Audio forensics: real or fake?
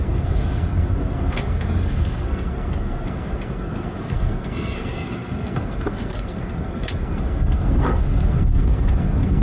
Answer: fake